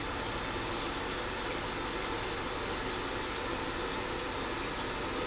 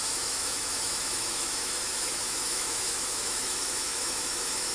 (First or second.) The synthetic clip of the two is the second